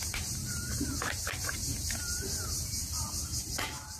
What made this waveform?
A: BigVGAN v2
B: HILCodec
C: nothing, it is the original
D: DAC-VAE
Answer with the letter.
A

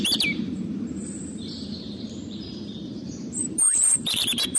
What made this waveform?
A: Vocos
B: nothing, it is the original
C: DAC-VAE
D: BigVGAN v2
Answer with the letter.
D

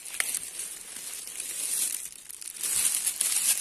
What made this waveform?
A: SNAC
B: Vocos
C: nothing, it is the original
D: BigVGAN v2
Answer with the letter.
C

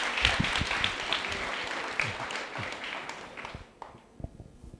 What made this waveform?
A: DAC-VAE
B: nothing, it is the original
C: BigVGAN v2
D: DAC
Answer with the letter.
B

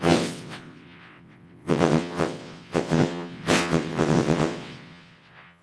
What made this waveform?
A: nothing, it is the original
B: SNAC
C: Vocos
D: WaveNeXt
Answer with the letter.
D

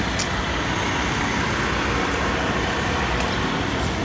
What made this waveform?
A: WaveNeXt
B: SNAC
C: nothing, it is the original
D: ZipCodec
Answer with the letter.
C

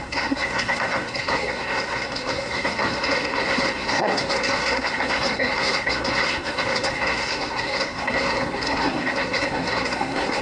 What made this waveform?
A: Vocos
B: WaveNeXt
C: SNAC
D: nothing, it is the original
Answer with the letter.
C